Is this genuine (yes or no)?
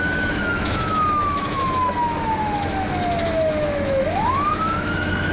no